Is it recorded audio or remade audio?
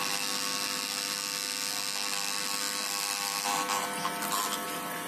recorded